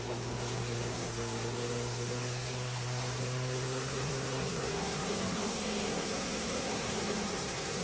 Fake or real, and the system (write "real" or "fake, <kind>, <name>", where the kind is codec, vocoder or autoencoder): fake, codec, SNAC